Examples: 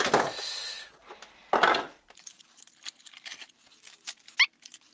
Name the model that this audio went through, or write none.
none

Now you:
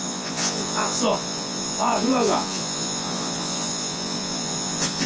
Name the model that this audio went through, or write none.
vocoder, Vocos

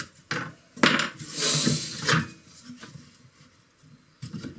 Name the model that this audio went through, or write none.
none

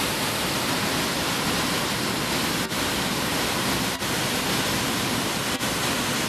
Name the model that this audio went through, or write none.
none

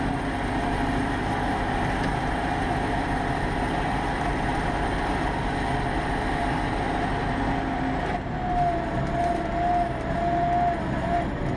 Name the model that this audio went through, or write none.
none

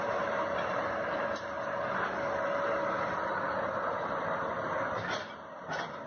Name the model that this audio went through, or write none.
none